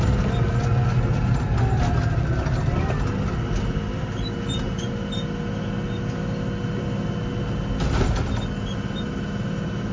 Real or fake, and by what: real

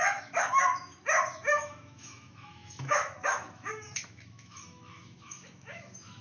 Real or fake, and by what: fake, autoencoder, DAC-VAE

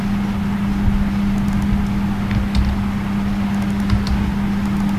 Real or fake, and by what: real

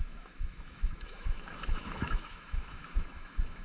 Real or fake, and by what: fake, autoencoder, DAC-VAE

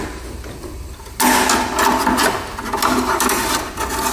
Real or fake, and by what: real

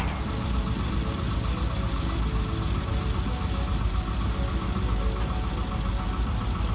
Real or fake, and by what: real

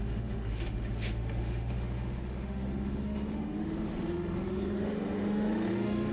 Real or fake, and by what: fake, autoencoder, DAC-VAE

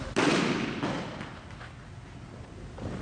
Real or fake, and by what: real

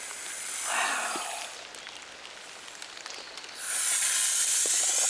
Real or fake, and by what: real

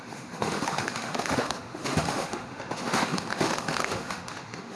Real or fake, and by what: fake, autoencoder, DAC-VAE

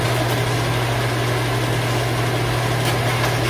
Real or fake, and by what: real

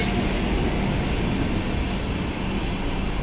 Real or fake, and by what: real